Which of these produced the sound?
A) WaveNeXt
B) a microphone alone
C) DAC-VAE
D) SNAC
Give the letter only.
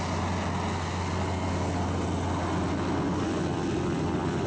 B